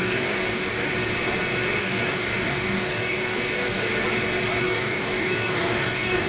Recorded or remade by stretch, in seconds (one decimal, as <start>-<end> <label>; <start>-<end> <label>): 0.0-0.9 remade; 0.9-1.8 recorded; 1.8-3.9 remade; 3.9-4.6 recorded; 4.6-6.3 remade

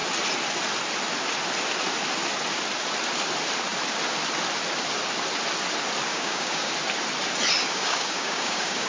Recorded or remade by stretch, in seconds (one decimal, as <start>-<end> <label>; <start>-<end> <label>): 0.0-6.1 recorded; 6.1-6.7 remade; 6.7-7.6 recorded; 7.6-8.9 remade

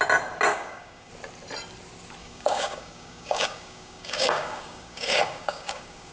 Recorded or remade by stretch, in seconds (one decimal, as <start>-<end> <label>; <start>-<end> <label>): 0.0-0.5 recorded; 0.5-1.1 remade; 1.1-2.2 recorded; 2.2-6.1 remade

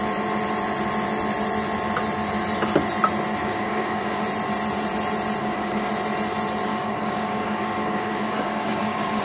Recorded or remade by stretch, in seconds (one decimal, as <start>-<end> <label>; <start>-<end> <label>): 0.0-3.4 recorded; 3.4-4.2 remade; 4.2-5.4 recorded; 5.4-5.9 remade; 5.9-6.7 recorded; 6.7-9.2 remade

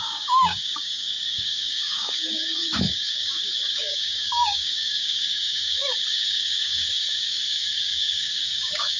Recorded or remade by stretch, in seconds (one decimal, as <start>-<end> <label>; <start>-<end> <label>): 0.0-9.0 remade